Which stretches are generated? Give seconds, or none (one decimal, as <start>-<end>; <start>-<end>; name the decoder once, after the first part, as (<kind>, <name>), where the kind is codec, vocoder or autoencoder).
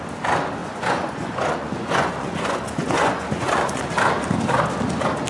0.6-3.8 (vocoder, Vocos)